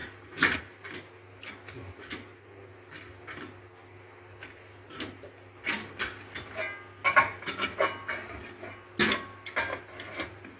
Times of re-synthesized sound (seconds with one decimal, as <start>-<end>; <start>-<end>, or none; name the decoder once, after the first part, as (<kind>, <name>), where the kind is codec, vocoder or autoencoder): none

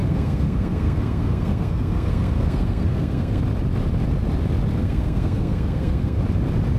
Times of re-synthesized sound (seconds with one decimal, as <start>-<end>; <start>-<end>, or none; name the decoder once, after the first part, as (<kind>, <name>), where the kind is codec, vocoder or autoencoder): 0.0-3.4 (codec, SNAC); 4.8-6.2

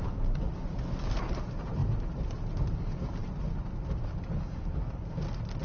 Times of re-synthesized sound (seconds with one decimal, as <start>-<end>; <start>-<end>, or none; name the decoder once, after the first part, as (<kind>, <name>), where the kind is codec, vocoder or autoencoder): none

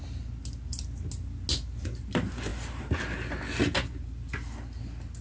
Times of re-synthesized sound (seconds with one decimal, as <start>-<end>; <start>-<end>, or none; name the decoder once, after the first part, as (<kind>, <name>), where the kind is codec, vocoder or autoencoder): none